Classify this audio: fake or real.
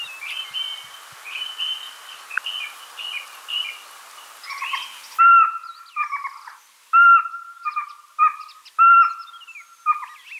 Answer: real